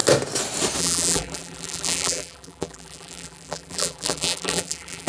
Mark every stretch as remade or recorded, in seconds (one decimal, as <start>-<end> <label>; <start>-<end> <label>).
0.0-0.8 recorded; 0.8-5.1 remade